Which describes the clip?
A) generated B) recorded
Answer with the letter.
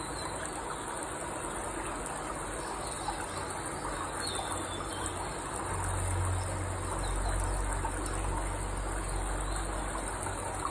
B